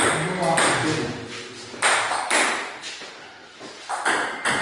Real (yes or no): yes